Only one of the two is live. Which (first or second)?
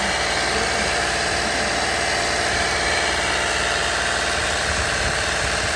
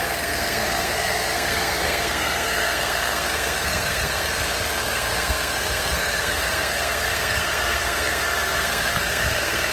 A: first